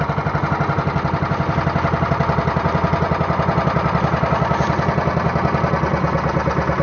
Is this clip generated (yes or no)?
no